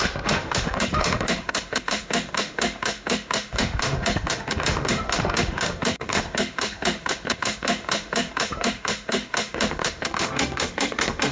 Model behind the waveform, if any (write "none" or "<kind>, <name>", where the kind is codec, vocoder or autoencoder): autoencoder, DAC-VAE